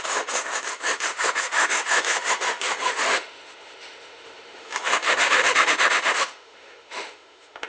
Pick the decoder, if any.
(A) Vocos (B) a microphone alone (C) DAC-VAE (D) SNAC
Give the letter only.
C